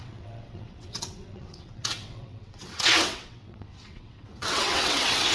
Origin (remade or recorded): remade